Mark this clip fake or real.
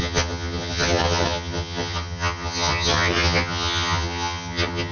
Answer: fake